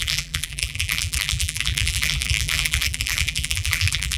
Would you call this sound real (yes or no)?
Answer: no